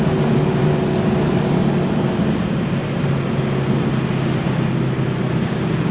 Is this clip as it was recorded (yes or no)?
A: yes